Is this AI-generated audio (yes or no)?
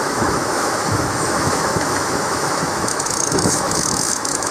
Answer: yes